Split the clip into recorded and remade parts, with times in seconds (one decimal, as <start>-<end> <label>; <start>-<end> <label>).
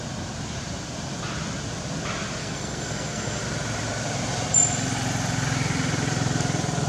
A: 0.0-2.4 recorded; 2.4-3.4 remade; 3.4-6.9 recorded